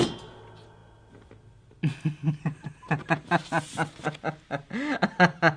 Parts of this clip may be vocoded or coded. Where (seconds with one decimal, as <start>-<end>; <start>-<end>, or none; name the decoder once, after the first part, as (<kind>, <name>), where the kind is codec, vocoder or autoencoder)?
none

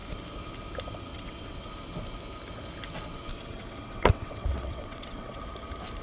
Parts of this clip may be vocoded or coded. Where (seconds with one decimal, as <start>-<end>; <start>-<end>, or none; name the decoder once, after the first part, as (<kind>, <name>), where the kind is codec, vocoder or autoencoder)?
1.1-1.7 (vocoder, WaveNeXt); 3.3-5.4

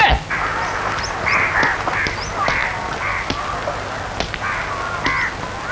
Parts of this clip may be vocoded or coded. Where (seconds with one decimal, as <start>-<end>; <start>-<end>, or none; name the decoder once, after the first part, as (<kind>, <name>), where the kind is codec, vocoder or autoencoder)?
none